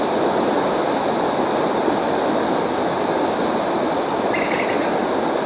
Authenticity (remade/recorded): recorded